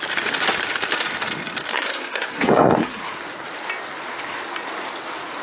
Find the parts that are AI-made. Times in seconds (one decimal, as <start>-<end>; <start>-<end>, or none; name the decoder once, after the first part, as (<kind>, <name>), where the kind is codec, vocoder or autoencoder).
1.7-3.0 (codec, SNAC)